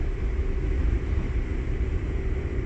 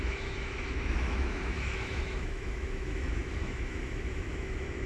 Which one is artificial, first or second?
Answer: second